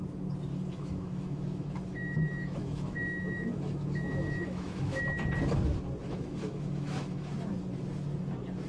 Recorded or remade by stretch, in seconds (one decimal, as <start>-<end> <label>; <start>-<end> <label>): 0.0-0.5 recorded; 0.5-5.0 remade; 5.0-6.0 recorded; 6.0-7.3 remade; 7.3-8.7 recorded